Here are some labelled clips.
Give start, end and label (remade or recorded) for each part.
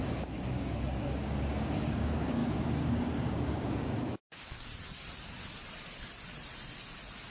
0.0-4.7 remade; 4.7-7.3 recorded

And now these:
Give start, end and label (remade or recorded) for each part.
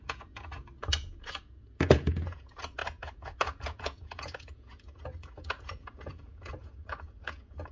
0.0-7.7 remade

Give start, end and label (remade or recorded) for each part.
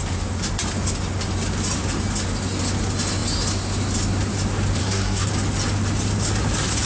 0.0-4.8 recorded; 4.8-5.3 remade; 5.3-6.8 recorded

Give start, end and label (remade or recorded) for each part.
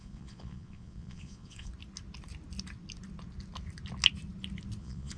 0.0-1.7 remade; 1.7-4.8 recorded; 4.8-5.2 remade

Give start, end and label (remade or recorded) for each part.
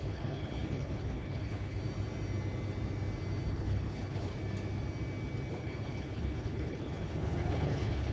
0.0-1.8 remade; 1.8-3.5 recorded; 3.5-4.3 remade; 4.3-5.5 recorded; 5.5-8.1 remade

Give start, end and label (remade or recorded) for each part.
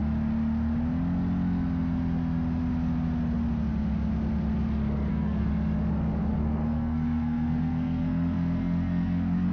0.0-5.1 recorded; 5.1-5.5 remade; 5.5-6.3 recorded; 6.3-9.5 remade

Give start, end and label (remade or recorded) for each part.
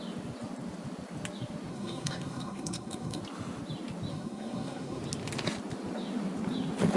0.0-1.7 recorded; 1.7-3.2 remade; 3.2-4.1 recorded; 4.1-5.0 remade; 5.0-7.0 recorded